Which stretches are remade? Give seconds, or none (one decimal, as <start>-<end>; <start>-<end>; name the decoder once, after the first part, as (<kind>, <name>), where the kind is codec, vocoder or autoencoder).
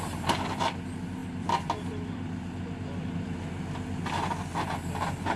none